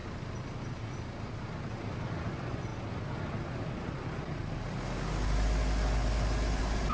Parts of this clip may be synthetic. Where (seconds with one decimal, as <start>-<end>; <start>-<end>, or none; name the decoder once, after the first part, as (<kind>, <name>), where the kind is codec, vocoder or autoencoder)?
2.0-2.7 (vocoder, Vocos)